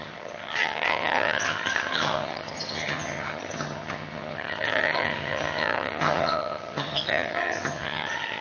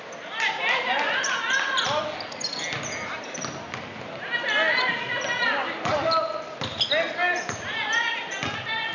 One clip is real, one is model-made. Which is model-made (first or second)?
first